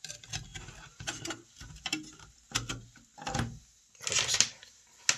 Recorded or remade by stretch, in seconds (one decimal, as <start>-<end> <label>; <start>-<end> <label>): 0.0-5.2 recorded